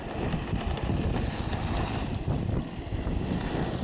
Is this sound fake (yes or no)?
no